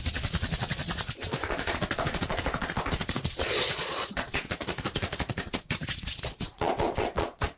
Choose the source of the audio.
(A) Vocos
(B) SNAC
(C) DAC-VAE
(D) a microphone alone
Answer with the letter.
A